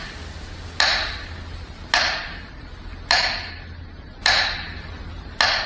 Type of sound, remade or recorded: recorded